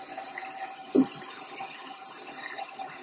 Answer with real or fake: real